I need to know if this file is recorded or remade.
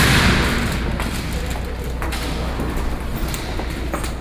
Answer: recorded